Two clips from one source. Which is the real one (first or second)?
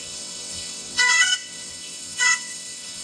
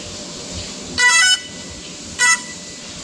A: second